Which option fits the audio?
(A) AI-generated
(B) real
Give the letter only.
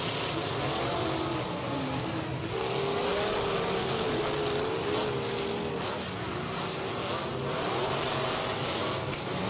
B